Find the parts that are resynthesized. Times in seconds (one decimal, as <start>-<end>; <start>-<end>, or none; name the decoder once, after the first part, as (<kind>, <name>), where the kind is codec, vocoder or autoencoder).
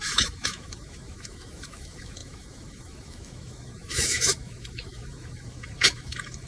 0.0-6.5 (autoencoder, DAC-VAE)